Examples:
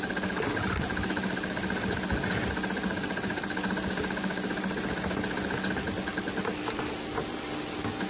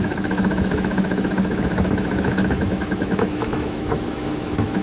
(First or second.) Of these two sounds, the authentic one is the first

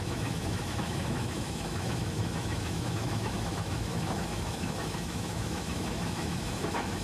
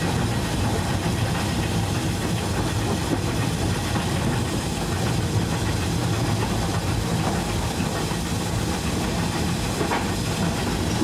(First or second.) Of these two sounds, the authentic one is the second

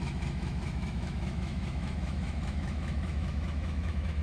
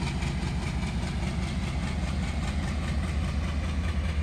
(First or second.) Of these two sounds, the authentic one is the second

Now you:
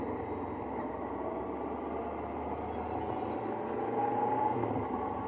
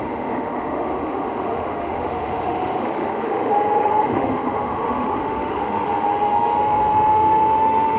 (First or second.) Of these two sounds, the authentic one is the first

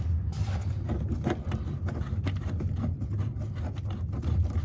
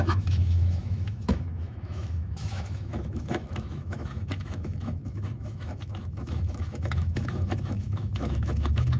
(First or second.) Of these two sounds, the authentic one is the first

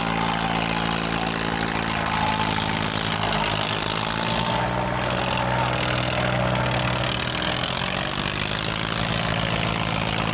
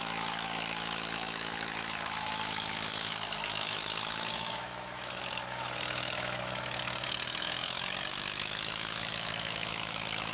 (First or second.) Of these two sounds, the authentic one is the first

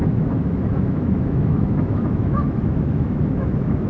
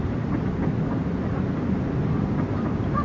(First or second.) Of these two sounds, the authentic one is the second